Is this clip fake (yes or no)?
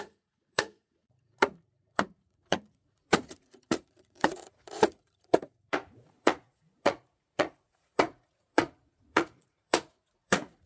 yes